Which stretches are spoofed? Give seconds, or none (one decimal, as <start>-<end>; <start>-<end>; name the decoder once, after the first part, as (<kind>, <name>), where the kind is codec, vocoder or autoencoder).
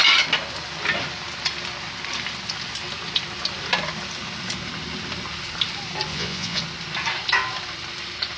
6.1-6.6 (vocoder, Vocos)